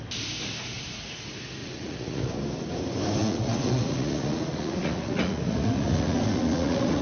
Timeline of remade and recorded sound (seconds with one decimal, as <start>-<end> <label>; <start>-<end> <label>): 0.0-1.6 recorded; 1.6-2.3 remade; 2.3-3.2 recorded; 3.2-7.0 remade